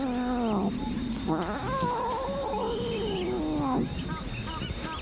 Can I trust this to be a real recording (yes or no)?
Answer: yes